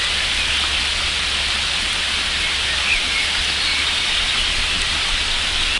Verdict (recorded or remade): recorded